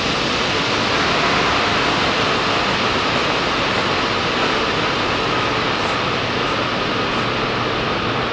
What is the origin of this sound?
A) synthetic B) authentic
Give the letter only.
B